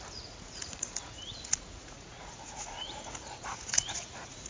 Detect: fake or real fake